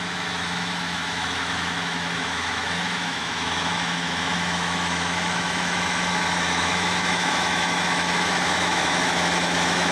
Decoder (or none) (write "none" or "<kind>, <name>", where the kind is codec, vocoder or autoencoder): autoencoder, DAC-VAE